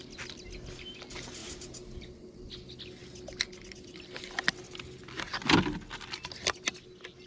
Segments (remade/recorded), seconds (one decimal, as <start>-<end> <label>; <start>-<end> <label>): 0.0-7.3 recorded